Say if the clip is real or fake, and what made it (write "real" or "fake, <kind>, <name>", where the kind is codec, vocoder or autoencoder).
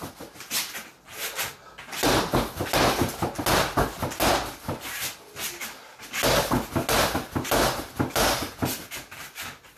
real